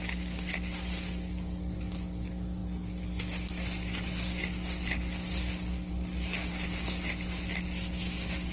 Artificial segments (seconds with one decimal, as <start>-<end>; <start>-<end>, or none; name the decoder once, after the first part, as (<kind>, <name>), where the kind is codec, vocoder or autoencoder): none